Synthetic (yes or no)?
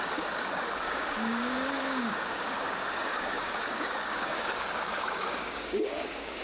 yes